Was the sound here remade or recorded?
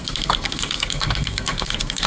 remade